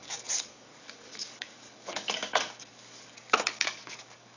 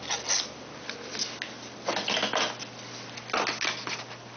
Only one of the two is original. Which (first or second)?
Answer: second